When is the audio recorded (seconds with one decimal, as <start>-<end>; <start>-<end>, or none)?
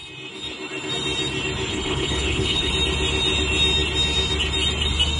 0.0-1.7; 2.7-5.2